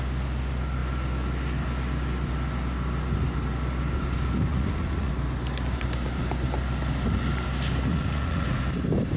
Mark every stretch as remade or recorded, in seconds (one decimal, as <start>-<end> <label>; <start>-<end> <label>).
0.0-4.5 recorded; 4.5-5.1 remade; 5.1-7.9 recorded; 7.9-8.6 remade; 8.6-9.2 recorded